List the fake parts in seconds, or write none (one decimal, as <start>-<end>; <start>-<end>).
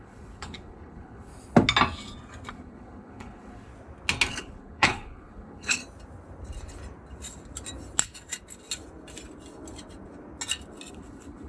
0.0-1.3; 2.5-3.7; 4.3-5.8; 10.9-11.5